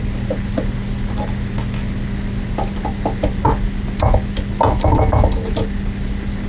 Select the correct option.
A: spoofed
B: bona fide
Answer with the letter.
B